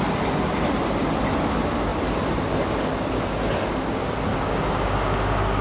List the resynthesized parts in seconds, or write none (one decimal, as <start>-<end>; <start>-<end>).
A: 4.3-5.6